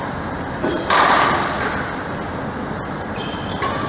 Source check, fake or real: fake